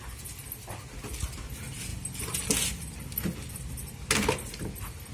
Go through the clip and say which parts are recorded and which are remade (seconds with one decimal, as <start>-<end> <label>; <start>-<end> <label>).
0.0-5.1 recorded